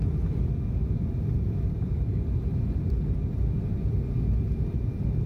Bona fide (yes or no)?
no